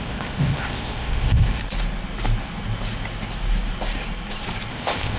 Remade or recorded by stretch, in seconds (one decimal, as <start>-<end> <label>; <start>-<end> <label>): 0.0-1.6 remade; 1.6-4.7 recorded; 4.7-5.2 remade